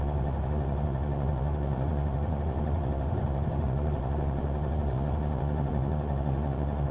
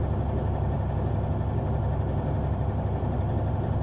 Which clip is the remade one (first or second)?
first